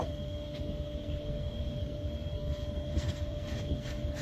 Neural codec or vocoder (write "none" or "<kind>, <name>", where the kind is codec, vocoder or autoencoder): codec, SNAC